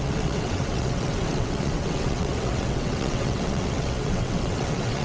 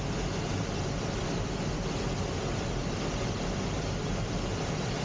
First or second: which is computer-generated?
first